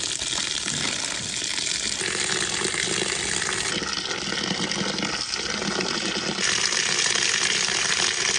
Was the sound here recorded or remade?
recorded